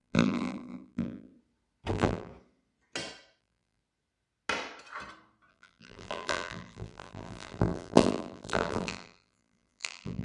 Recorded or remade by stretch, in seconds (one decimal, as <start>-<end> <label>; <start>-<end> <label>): 0.0-1.3 remade; 1.3-1.9 recorded; 1.9-2.3 remade; 2.3-3.4 recorded; 3.4-3.8 remade; 3.8-5.5 recorded; 5.5-10.2 remade